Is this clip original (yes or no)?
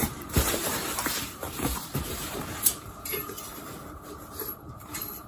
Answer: no